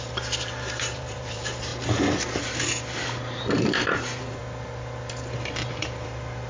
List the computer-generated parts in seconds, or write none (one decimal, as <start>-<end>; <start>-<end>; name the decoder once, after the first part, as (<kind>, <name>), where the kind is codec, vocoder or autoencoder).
0.0-1.7 (vocoder, BigVGAN v2); 3.4-4.4; 5.7-6.5